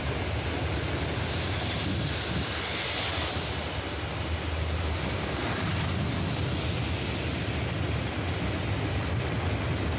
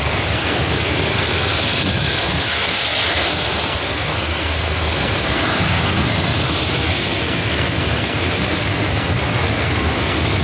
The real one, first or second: first